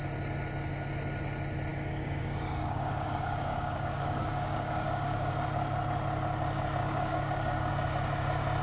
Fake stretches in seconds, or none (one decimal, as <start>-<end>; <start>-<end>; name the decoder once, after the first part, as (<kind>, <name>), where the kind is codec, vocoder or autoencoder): 1.7-5.3 (codec, DAC); 6.8-7.7